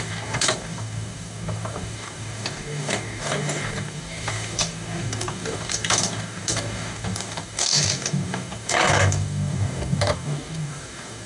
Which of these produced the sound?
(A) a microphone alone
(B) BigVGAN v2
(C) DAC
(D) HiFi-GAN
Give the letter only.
C